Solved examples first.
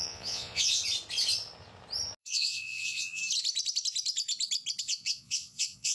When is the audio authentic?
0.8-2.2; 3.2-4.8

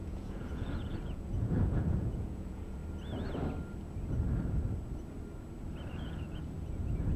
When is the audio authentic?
2.8-5.9

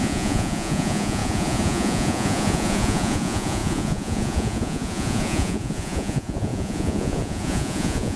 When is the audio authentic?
none